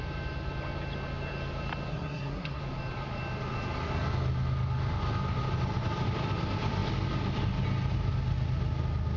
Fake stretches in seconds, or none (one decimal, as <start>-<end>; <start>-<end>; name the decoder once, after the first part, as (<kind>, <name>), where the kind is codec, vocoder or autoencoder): 1.9-2.6 (codec, SNAC)